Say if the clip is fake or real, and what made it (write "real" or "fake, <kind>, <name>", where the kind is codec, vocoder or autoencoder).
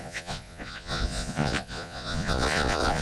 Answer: fake, vocoder, Vocos